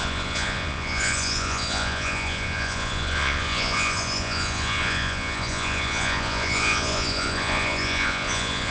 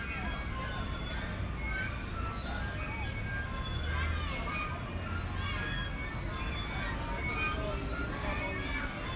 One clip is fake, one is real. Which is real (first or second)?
second